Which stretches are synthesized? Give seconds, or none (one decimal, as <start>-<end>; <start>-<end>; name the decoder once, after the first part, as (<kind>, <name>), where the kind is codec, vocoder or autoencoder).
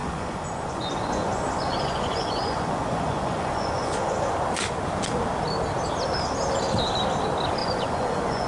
0.0-4.3 (vocoder, Vocos); 7.6-8.5